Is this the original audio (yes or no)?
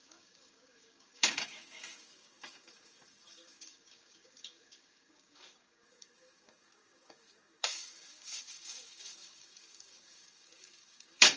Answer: no